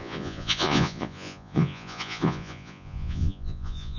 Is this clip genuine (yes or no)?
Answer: no